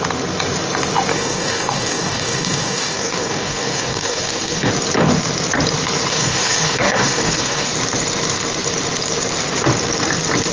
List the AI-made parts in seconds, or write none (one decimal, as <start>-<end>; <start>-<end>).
1.1-4.7; 6.1-7.7